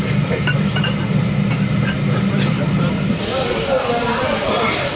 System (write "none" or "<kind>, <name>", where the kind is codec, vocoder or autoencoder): none